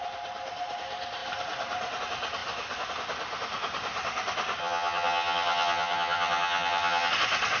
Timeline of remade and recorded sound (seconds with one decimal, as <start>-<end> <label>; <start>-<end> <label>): 0.0-4.6 recorded; 4.6-7.1 remade; 7.1-7.6 recorded